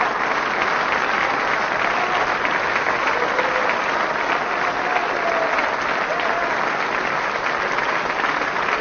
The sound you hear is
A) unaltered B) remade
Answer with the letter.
A